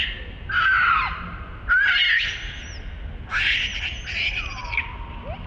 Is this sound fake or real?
real